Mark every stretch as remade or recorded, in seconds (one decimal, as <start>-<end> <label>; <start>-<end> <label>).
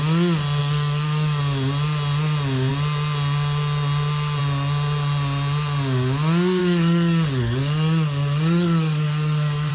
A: 0.0-0.6 recorded; 0.6-1.4 remade; 1.4-6.6 recorded; 6.6-9.7 remade